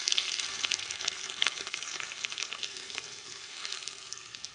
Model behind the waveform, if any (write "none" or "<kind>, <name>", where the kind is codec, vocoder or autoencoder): codec, SNAC